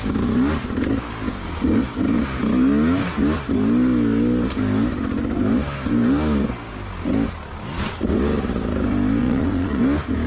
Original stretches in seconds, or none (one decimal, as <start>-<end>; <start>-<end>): 0.0-9.2; 9.8-10.3